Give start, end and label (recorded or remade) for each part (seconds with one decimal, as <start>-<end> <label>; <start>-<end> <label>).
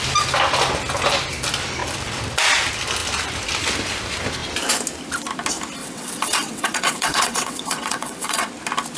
0.0-5.8 recorded; 5.8-8.5 remade; 8.5-9.0 recorded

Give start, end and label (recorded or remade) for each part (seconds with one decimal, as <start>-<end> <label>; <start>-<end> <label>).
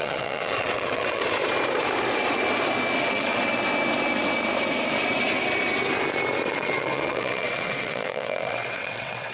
0.0-1.2 remade; 1.2-3.0 recorded; 3.0-3.5 remade; 3.5-6.5 recorded; 6.5-9.3 remade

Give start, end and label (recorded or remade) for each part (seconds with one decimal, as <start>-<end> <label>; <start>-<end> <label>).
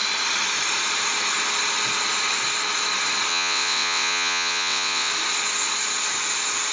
0.0-3.3 recorded; 3.3-5.1 remade; 5.1-6.7 recorded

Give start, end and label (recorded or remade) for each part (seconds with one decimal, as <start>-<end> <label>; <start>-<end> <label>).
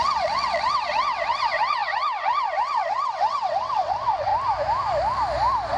0.0-4.3 remade; 4.3-5.8 recorded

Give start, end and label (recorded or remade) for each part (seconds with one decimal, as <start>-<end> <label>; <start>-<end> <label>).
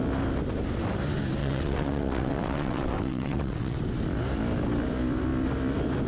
0.0-1.4 recorded; 1.4-3.8 remade; 3.8-6.1 recorded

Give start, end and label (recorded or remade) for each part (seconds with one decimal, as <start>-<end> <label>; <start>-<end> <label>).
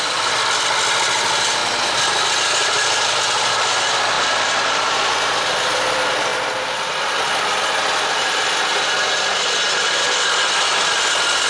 0.0-11.5 recorded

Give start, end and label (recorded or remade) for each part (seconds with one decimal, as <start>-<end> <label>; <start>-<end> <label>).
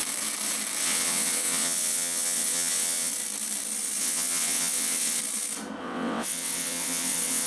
0.0-0.8 recorded; 0.8-3.1 remade; 3.1-4.0 recorded; 4.0-5.2 remade; 5.2-5.8 recorded; 5.8-7.5 remade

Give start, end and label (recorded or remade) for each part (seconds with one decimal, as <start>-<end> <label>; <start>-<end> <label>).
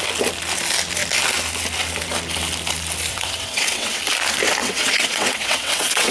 0.0-3.1 recorded; 3.1-4.0 remade; 4.0-4.6 recorded; 4.6-6.1 remade